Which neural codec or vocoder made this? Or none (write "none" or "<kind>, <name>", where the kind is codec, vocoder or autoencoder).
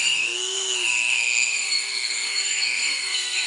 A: codec, SNAC